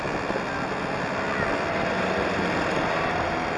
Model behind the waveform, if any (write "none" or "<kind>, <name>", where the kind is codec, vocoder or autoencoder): none